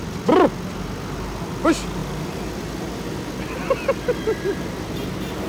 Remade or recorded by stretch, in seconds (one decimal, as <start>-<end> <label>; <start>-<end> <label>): 0.0-5.5 recorded